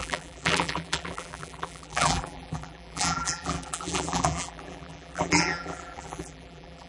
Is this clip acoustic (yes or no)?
no